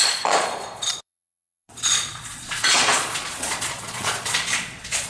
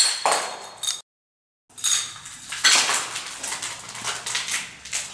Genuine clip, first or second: second